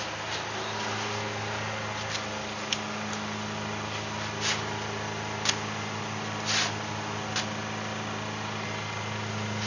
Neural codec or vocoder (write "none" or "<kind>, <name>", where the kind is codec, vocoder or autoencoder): none